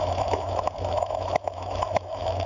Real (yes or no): no